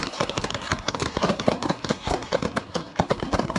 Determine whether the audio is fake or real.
fake